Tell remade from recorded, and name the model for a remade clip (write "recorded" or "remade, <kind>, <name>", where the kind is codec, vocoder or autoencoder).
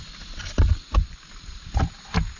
recorded